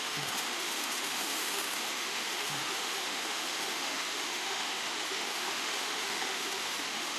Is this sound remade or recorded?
remade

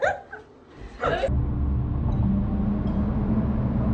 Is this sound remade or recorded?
recorded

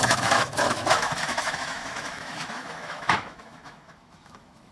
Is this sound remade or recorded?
remade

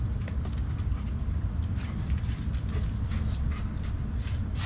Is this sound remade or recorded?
recorded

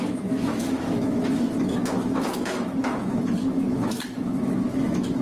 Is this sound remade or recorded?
remade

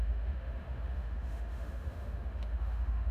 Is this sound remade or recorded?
remade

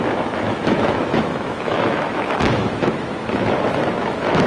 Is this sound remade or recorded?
remade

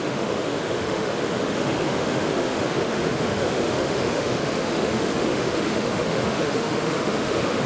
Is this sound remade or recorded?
remade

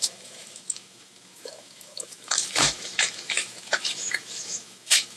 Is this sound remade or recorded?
remade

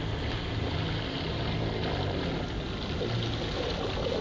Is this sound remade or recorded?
recorded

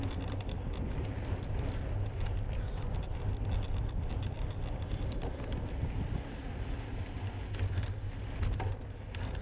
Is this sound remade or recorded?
recorded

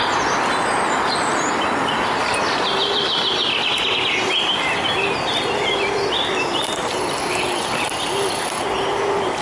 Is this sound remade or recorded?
recorded